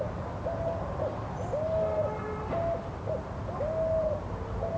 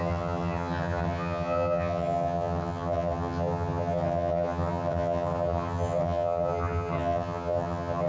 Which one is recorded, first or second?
first